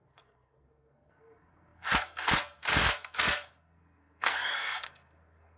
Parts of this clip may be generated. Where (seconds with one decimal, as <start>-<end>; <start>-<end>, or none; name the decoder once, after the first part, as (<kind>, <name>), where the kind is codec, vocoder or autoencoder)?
0.0-5.6 (codec, SNAC)